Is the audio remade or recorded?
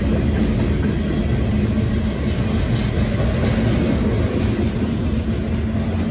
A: recorded